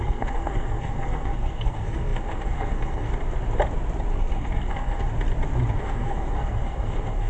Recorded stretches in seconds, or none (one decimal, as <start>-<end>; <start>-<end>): 3.1-4.1; 5.1-5.7